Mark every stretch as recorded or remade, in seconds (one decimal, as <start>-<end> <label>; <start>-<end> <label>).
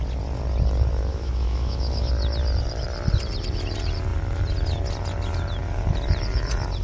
0.0-1.1 recorded; 1.1-2.1 remade; 2.1-6.8 recorded